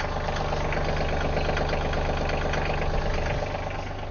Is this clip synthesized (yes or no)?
no